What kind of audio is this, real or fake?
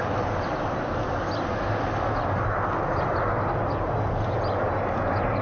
real